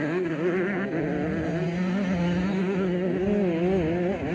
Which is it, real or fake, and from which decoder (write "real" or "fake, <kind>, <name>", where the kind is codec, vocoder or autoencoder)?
real